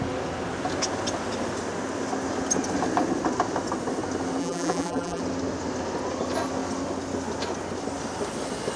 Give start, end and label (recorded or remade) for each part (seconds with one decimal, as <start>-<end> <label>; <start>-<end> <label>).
0.0-4.4 recorded; 4.4-5.2 remade; 5.2-8.8 recorded